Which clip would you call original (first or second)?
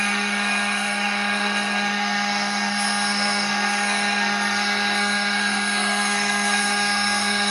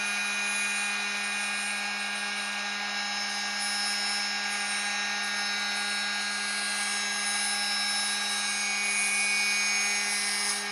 second